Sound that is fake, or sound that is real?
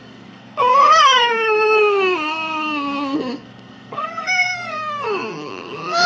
fake